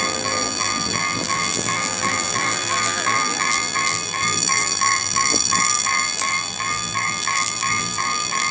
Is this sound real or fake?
fake